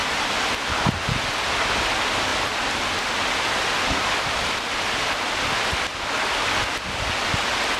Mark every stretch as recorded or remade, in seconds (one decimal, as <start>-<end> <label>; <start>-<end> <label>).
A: 0.0-7.8 recorded